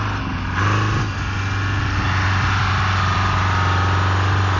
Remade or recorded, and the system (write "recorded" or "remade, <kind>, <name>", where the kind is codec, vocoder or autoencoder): recorded